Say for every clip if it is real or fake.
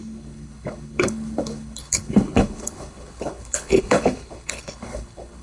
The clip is fake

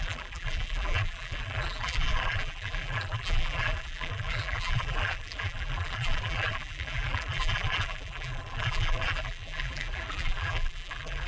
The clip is fake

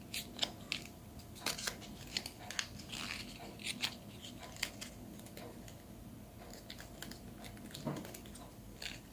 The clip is real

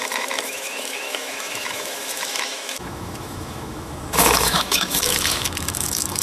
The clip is fake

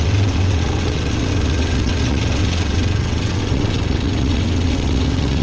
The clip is fake